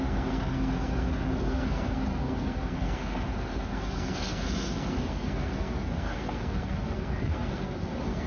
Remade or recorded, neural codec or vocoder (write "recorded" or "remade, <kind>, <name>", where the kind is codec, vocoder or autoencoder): remade, codec, SNAC